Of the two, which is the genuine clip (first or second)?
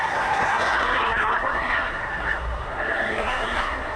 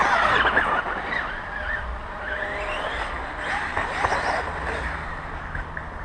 second